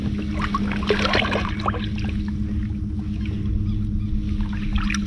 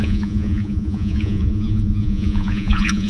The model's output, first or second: second